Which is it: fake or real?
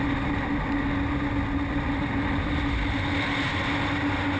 real